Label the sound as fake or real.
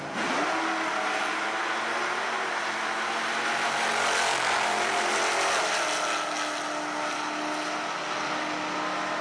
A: real